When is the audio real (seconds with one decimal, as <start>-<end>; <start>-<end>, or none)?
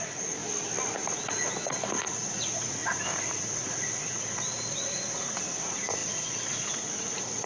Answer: 0.4-1.1